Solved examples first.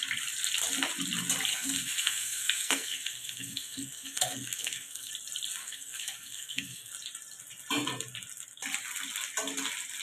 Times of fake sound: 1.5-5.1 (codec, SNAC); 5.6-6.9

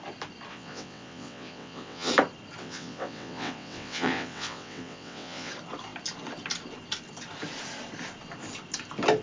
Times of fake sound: 0.5-2.1 (vocoder, WaveNeXt); 2.6-5.5

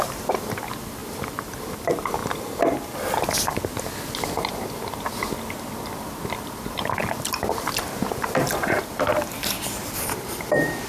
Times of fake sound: 0.0-2.2 (vocoder, BigVGAN v2); 5.7-10.9

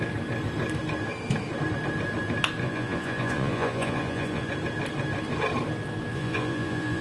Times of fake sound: 2.6-4.5 (vocoder, Vocos); 6.1-7.0

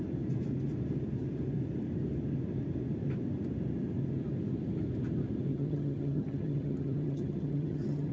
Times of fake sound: 5.5-8.1 (vocoder, HiFi-GAN)